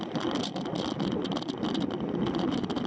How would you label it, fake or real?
real